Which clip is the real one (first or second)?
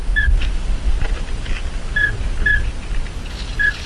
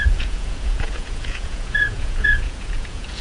first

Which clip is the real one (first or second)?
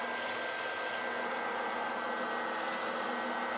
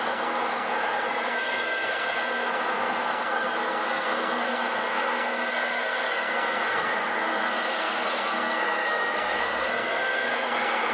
first